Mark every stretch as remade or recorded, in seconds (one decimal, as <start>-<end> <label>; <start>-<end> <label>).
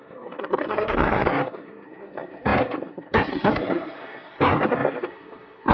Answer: 0.0-5.7 remade